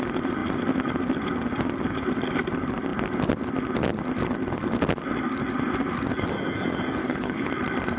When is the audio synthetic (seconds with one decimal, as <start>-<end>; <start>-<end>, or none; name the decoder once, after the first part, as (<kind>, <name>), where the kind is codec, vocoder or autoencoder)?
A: 7.0-7.5 (codec, HILCodec)